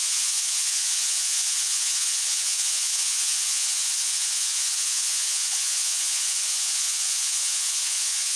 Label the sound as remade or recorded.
remade